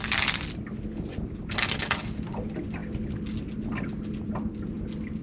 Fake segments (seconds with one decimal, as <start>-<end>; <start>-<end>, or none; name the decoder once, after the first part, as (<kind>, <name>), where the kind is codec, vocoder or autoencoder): none